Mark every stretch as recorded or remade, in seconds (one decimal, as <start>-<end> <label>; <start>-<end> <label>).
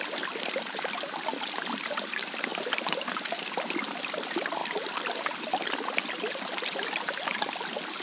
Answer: 0.0-8.0 recorded